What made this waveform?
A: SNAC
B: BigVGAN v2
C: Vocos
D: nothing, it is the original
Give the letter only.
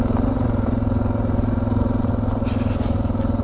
D